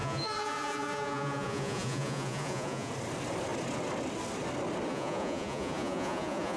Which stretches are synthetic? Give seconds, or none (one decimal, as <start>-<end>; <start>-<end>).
0.0-2.9; 4.9-6.6